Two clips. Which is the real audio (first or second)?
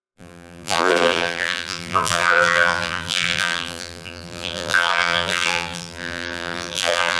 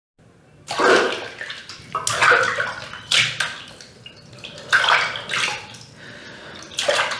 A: second